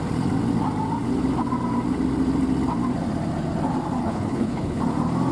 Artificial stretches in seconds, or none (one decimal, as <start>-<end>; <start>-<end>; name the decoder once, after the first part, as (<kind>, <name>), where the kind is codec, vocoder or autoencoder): 4.0-4.8 (codec, HILCodec)